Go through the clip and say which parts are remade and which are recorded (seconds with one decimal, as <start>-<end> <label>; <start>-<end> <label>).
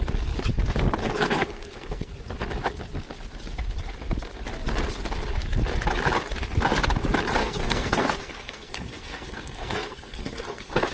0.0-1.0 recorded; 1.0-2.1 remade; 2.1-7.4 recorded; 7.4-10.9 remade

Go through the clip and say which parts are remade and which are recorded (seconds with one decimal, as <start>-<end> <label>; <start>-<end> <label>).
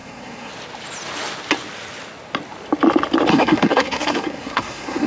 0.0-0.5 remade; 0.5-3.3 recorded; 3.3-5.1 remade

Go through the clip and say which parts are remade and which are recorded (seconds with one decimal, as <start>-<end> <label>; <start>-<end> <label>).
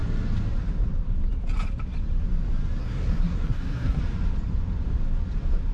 0.0-2.8 recorded; 2.8-4.0 remade; 4.0-5.7 recorded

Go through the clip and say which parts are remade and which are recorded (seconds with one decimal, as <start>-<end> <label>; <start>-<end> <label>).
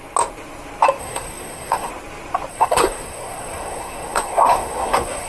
0.0-1.0 recorded; 1.0-1.9 remade; 1.9-2.5 recorded; 2.5-5.3 remade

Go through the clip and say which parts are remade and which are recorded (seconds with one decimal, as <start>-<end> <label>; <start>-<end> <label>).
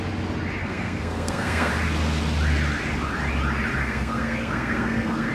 0.0-0.6 recorded; 0.6-1.7 remade; 1.7-3.8 recorded; 3.8-5.3 remade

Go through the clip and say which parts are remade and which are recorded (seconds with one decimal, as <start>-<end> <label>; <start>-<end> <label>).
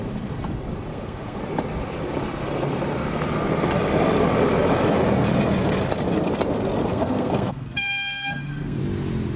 0.0-0.9 recorded; 0.9-1.4 remade; 1.4-6.9 recorded; 6.9-8.8 remade; 8.8-9.4 recorded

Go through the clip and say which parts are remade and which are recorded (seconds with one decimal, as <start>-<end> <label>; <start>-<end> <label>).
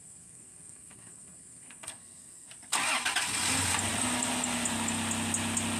0.0-2.5 remade; 2.5-5.8 recorded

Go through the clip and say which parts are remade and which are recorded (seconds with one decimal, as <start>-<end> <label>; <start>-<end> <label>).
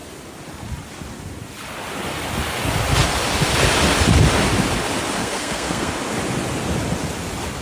0.0-5.2 recorded; 5.2-5.9 remade; 5.9-7.6 recorded